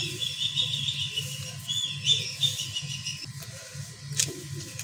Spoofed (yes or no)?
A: no